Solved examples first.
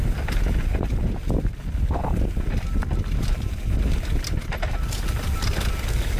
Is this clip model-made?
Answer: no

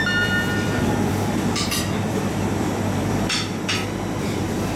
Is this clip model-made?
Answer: yes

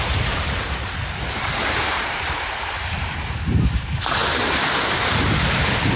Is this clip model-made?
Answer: yes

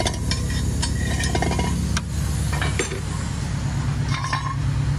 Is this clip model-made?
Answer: no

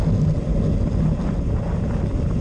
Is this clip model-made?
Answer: no